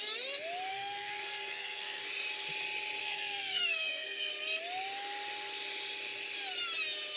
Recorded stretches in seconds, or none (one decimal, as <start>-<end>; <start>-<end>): 0.0-0.7; 2.0-3.0; 4.3-7.2